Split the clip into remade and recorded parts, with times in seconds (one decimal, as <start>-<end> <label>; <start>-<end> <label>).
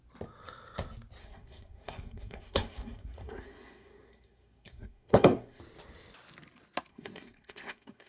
0.0-1.2 recorded; 1.2-5.6 remade; 5.6-6.9 recorded; 6.9-8.1 remade